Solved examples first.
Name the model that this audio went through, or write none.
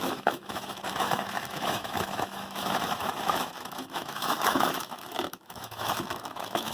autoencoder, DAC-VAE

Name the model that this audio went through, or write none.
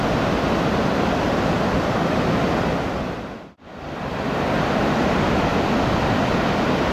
none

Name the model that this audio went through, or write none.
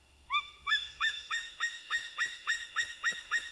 autoencoder, DAC-VAE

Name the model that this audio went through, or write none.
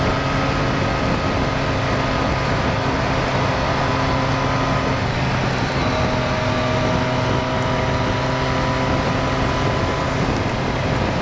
none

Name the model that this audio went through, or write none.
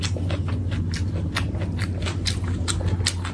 none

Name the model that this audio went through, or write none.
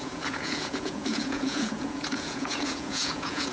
vocoder, Vocos